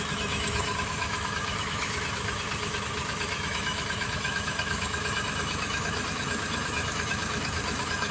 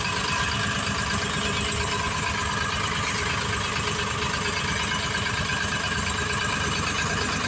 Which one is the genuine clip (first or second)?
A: second